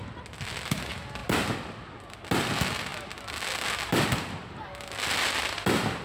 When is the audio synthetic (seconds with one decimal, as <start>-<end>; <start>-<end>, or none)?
none